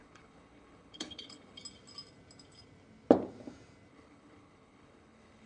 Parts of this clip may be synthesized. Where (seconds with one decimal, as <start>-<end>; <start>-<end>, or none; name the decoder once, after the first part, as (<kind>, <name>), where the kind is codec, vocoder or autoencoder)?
0.0-1.6 (codec, HILCodec); 3.9-5.5